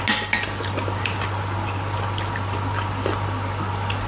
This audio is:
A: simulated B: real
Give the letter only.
B